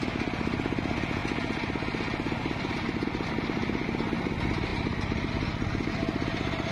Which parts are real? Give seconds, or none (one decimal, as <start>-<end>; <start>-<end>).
0.0-6.7